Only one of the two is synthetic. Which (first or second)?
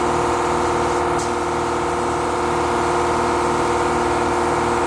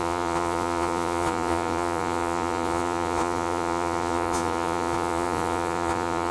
second